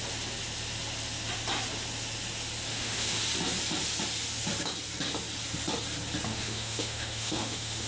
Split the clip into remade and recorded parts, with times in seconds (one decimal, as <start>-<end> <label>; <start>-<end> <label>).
0.0-2.7 recorded; 2.7-3.2 remade; 3.2-6.3 recorded; 6.3-7.9 remade

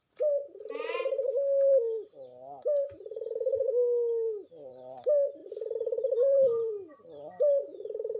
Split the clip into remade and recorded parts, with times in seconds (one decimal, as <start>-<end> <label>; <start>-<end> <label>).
0.0-5.4 recorded; 5.4-7.4 remade; 7.4-8.2 recorded

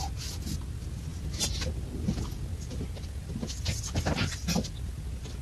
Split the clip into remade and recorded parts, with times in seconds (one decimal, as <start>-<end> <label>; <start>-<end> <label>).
0.0-5.4 recorded

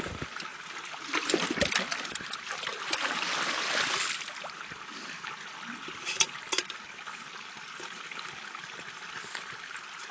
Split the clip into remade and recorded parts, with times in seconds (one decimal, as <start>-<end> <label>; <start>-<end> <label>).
0.0-10.1 recorded

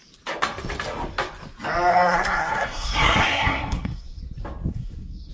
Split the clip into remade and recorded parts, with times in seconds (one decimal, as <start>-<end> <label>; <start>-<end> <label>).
0.0-1.9 recorded; 1.9-4.2 remade; 4.2-4.7 recorded; 4.7-5.3 remade

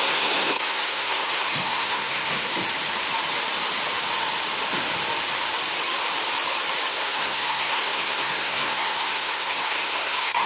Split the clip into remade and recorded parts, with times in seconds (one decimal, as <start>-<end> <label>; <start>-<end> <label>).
0.0-2.5 remade; 2.5-6.9 recorded; 6.9-10.5 remade

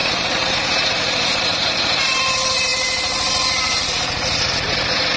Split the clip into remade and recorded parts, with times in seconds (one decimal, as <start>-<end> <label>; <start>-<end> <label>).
0.0-1.7 remade; 1.7-5.2 recorded

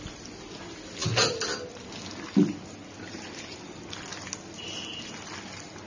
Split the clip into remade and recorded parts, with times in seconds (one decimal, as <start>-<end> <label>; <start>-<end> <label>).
0.0-5.9 recorded